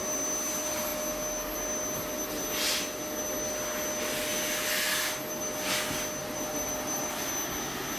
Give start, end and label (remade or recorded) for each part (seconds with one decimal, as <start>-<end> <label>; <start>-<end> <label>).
0.0-6.2 recorded; 6.2-7.3 remade; 7.3-8.0 recorded